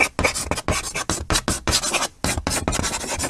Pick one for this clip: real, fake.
real